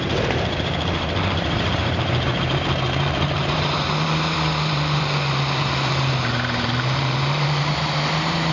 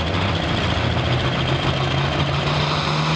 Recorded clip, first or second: second